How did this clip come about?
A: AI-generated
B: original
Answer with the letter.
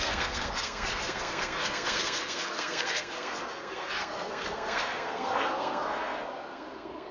A